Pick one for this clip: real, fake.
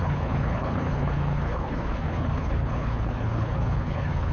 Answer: fake